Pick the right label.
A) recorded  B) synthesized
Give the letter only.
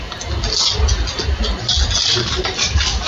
A